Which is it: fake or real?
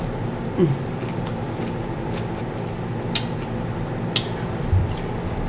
real